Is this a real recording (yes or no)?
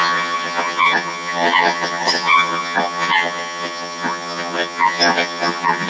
no